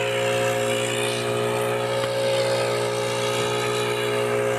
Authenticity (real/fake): real